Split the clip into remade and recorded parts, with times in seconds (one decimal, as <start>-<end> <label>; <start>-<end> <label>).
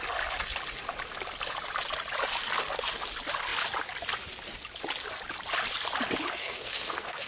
0.0-6.4 recorded; 6.4-7.3 remade